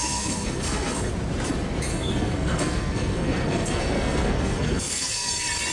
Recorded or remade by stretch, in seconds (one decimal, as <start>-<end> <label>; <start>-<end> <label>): 0.0-1.1 remade; 1.1-1.9 recorded; 1.9-5.3 remade; 5.3-5.7 recorded